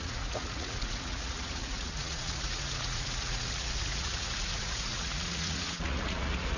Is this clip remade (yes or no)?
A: yes